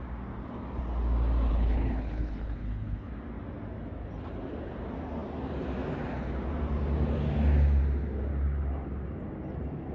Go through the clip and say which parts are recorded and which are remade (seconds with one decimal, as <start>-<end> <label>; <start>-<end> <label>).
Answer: 0.0-1.5 recorded; 1.5-3.1 remade; 3.1-9.9 recorded